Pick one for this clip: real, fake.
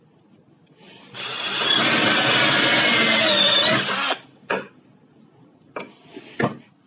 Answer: real